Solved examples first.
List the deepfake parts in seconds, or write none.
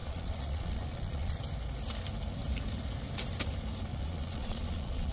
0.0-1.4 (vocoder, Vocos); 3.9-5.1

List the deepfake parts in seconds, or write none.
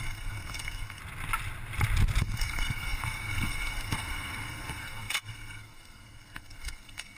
0.0-1.0 (codec, SNAC); 2.2-7.2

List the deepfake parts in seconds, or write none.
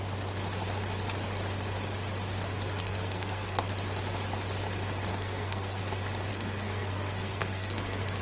2.8-3.7 (codec, SNAC); 5.1-5.8; 6.3-8.2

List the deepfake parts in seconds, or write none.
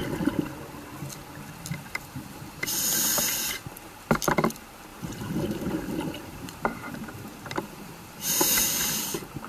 1.8-2.4 (vocoder, BigVGAN v2); 4.9-8.8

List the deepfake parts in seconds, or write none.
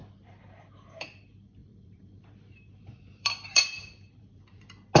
1.6-4.6 (vocoder, BigVGAN v2)